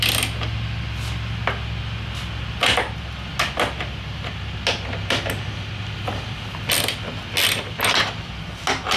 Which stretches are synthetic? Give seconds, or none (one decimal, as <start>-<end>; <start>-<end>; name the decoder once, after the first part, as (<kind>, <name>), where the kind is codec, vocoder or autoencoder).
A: none